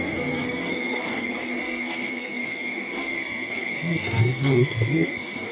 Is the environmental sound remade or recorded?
remade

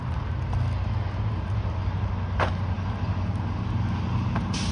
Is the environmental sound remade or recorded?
recorded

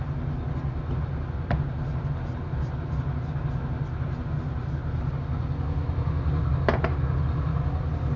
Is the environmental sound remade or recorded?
recorded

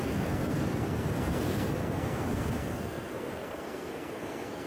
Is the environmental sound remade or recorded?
remade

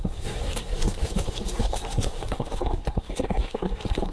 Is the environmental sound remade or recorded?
remade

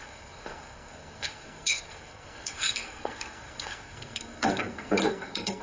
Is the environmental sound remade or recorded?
remade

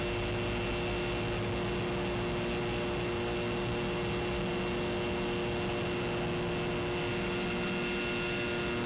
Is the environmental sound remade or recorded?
recorded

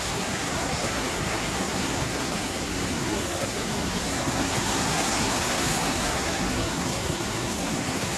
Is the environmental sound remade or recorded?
remade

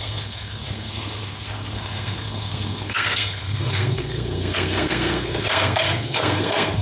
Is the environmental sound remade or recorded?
remade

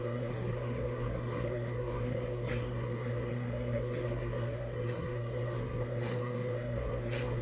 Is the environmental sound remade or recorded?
remade